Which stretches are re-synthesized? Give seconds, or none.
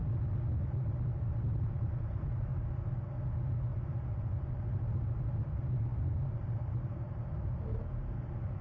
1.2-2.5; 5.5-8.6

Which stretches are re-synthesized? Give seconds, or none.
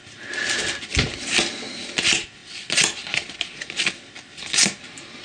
none